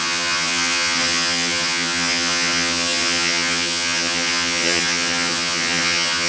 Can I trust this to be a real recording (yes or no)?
no